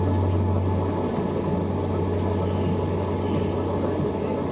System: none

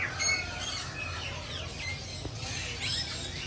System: none